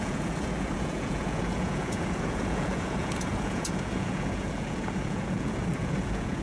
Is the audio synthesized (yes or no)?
yes